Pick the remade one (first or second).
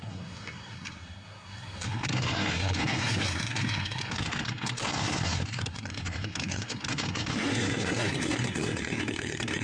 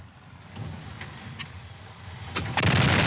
first